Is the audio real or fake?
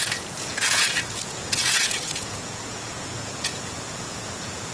fake